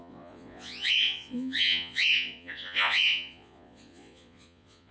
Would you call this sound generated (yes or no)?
yes